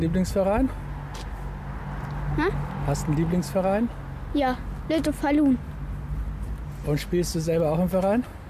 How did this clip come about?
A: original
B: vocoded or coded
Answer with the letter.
A